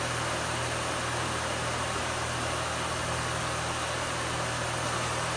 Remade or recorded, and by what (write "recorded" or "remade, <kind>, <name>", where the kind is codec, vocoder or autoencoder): recorded